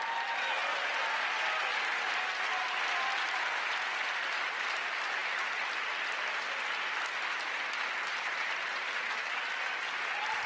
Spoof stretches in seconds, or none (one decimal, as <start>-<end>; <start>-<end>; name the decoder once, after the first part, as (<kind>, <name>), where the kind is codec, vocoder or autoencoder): none